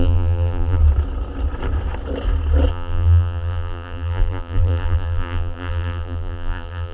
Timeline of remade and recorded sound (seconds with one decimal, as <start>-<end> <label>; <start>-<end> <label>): 0.0-0.8 remade; 0.8-2.7 recorded; 2.7-6.9 remade

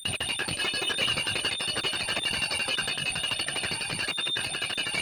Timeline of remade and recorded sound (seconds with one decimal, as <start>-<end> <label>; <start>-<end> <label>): 0.0-0.8 remade; 0.8-1.5 recorded; 1.5-5.0 remade

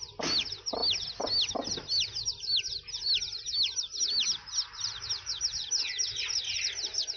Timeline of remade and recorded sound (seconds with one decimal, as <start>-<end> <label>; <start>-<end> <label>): 0.0-7.2 recorded

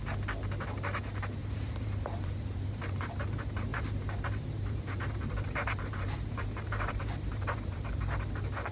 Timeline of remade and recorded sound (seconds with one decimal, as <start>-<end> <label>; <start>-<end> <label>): 0.0-1.4 recorded; 1.4-3.2 remade; 3.2-3.7 recorded; 3.7-7.9 remade; 7.9-8.7 recorded

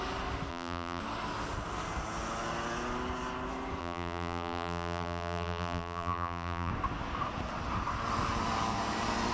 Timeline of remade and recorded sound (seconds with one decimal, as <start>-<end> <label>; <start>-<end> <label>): 0.0-0.5 recorded; 0.5-1.0 remade; 1.0-3.8 recorded; 3.8-6.7 remade; 6.7-9.3 recorded

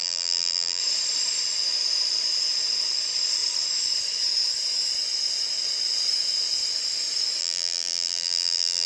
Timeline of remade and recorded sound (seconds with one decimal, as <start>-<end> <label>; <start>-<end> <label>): 0.0-0.8 remade; 0.8-7.4 recorded; 7.4-8.9 remade

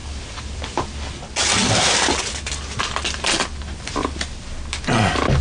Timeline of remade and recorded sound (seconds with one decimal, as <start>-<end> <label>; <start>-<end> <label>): 0.0-0.6 remade; 0.6-1.6 recorded; 1.6-4.8 remade; 4.8-5.4 recorded